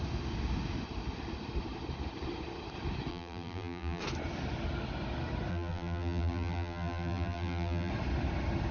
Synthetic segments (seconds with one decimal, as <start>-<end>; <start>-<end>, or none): 3.1-4.0; 5.5-7.9